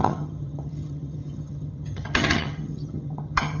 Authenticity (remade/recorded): remade